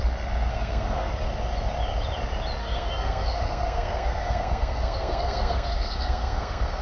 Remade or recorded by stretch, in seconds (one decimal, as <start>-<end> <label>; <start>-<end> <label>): 0.0-0.5 recorded; 0.5-1.1 remade; 1.1-2.6 recorded; 2.6-6.8 remade

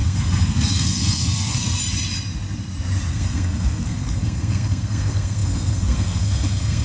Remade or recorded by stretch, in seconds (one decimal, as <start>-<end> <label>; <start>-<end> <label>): 0.0-1.8 remade; 1.8-3.1 recorded; 3.1-6.8 remade

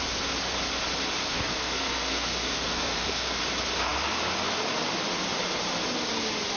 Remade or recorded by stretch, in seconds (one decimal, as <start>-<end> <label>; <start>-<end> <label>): 0.0-1.2 recorded; 1.2-3.4 remade; 3.4-6.6 recorded

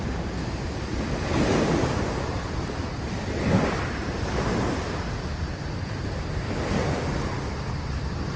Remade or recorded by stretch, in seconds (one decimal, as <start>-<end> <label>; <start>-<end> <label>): 0.0-8.4 recorded